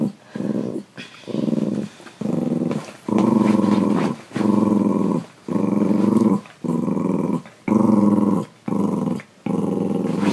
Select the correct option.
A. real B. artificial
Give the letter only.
B